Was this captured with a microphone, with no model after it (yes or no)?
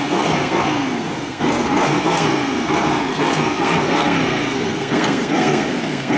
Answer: no